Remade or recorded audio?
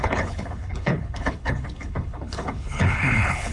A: remade